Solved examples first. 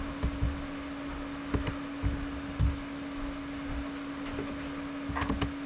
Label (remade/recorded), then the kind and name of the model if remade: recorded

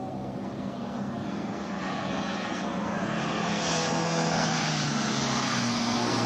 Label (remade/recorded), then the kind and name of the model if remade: remade, codec, SNAC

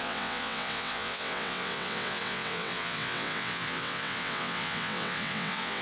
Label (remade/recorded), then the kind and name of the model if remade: remade, vocoder, WaveNeXt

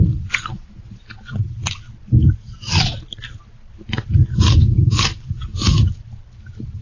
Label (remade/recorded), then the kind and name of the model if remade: recorded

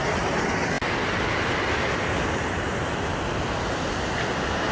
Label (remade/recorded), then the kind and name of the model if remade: recorded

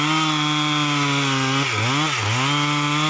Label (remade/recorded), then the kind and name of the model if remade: recorded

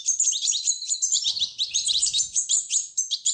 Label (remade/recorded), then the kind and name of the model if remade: remade, vocoder, BigVGAN v2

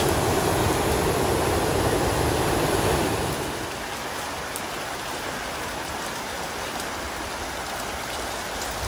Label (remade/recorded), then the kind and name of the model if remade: recorded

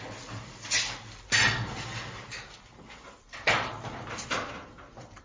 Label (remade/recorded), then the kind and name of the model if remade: recorded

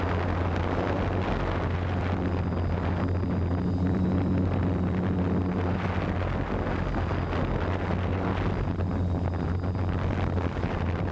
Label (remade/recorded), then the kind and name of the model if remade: recorded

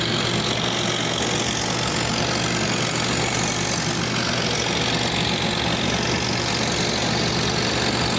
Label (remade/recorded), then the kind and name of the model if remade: recorded